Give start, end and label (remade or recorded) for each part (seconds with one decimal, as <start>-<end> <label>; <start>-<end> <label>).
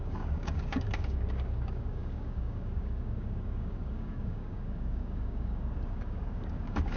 0.0-7.0 remade